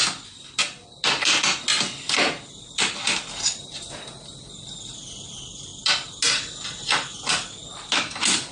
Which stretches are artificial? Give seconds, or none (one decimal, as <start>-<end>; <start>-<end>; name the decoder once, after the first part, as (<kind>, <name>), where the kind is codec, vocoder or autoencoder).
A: none